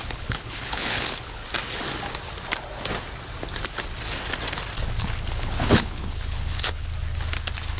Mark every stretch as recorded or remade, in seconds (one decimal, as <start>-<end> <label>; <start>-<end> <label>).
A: 0.0-1.4 remade; 1.4-5.0 recorded; 5.0-6.9 remade; 6.9-7.8 recorded